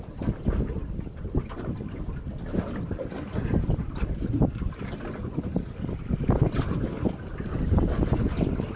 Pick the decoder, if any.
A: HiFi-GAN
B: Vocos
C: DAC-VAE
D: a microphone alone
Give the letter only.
D